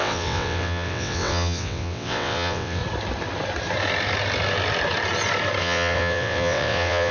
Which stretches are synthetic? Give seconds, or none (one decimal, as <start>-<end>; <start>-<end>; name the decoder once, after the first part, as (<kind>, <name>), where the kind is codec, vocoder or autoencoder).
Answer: 0.0-2.8 (vocoder, WaveNeXt); 5.6-7.1